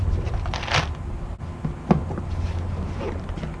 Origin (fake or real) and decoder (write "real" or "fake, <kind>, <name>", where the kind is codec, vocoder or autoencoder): real